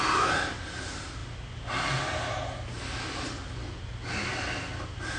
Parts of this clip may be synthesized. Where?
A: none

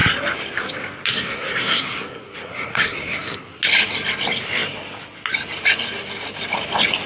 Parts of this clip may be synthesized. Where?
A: 1.1-3.6 (codec, SNAC)

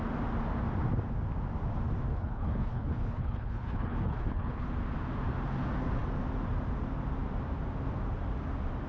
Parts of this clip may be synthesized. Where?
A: 2.1-4.7 (codec, HILCodec)

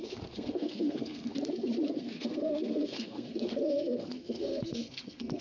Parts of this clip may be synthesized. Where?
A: 0.0-1.3 (codec, SNAC); 1.9-5.4